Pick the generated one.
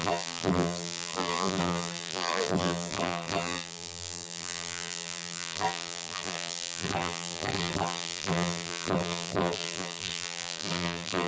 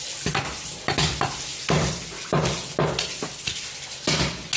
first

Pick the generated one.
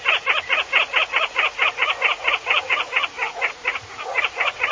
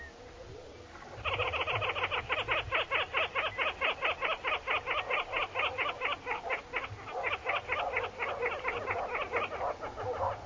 first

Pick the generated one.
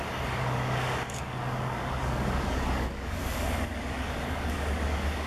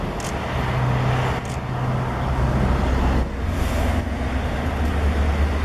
first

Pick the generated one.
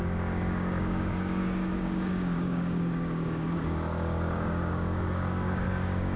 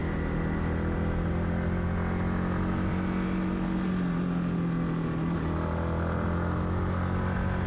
first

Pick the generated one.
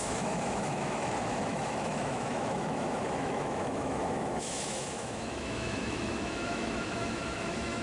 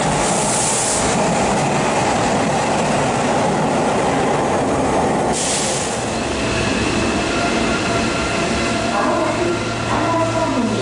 first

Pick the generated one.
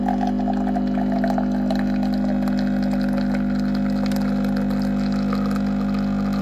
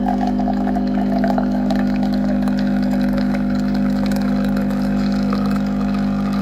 second